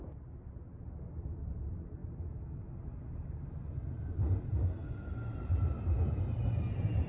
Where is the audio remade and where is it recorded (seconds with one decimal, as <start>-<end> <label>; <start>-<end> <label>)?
0.0-7.1 recorded